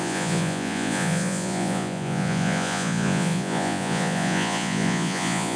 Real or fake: fake